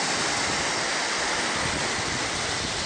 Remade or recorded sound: recorded